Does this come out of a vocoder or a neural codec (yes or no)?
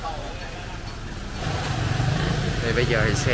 no